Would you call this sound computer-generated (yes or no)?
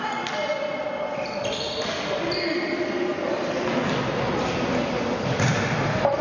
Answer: no